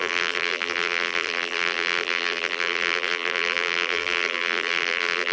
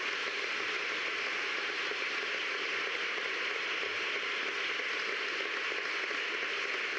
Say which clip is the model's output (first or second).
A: first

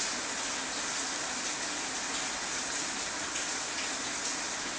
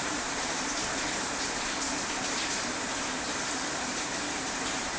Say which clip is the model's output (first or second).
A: second